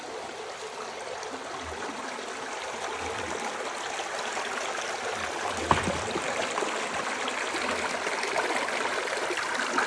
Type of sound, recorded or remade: recorded